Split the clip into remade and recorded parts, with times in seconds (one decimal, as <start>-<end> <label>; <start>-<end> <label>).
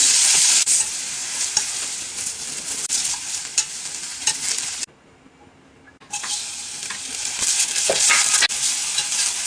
0.0-0.9 remade; 0.9-9.5 recorded